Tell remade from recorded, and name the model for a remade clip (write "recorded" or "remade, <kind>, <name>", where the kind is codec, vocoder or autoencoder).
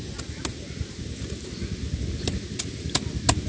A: recorded